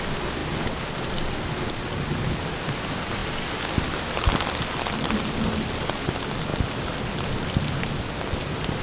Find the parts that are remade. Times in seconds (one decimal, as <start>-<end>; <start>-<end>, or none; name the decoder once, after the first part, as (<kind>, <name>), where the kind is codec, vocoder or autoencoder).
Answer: none